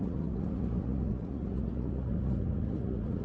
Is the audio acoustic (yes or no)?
no